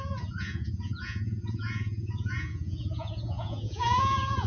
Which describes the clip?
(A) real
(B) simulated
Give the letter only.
B